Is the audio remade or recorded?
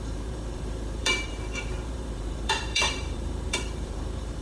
remade